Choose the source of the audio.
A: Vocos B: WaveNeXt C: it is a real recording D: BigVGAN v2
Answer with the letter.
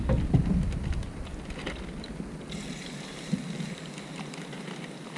C